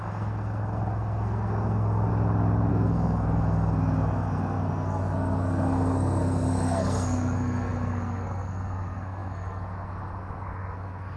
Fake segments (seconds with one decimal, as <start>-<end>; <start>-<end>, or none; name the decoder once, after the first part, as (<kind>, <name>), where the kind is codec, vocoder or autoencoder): 0.0-2.1 (codec, SNAC); 2.7-11.2